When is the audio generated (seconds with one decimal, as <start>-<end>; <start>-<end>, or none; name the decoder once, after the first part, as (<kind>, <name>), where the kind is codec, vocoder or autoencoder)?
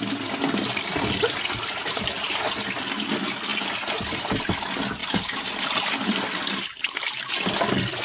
1.8-2.4 (vocoder, BigVGAN v2)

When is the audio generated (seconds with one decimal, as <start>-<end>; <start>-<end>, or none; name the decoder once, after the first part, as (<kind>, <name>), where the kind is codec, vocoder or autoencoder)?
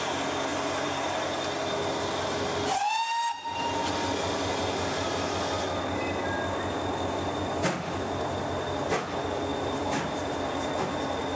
9.5-10.8 (vocoder, BigVGAN v2)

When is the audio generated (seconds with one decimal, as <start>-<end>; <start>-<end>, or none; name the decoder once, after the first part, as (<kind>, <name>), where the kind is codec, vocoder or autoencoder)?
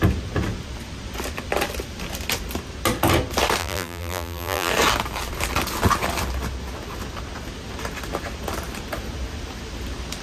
3.6-4.7 (vocoder, BigVGAN v2)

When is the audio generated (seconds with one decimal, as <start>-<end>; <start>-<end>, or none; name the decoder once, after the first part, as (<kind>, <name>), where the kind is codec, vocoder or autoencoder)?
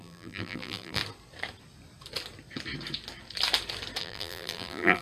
0.0-1.0 (vocoder, BigVGAN v2); 4.0-5.0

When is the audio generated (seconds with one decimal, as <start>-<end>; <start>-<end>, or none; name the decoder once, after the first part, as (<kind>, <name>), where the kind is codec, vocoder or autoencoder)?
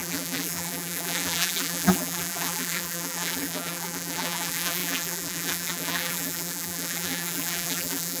0.0-8.2 (vocoder, BigVGAN v2)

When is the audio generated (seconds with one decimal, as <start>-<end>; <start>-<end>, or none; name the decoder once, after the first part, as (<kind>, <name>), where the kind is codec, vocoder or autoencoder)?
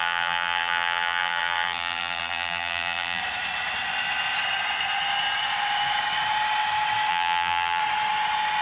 0.0-3.2 (vocoder, BigVGAN v2); 7.1-7.8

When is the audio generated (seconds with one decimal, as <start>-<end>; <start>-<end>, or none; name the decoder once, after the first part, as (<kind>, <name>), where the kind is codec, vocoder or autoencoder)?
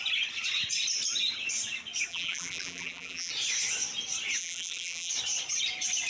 2.1-3.3 (vocoder, BigVGAN v2); 4.4-5.1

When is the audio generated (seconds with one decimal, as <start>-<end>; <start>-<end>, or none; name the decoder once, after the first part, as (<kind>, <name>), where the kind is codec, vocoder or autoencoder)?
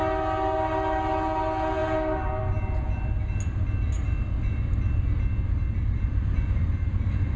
none